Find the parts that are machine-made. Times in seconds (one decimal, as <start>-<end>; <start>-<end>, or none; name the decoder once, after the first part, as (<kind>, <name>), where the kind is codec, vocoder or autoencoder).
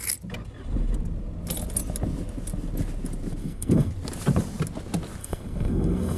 3.4-3.9 (codec, SNAC); 5.2-6.2